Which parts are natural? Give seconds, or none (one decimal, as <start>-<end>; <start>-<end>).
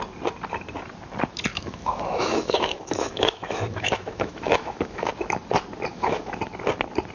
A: 0.0-1.5; 5.1-5.9; 6.4-7.1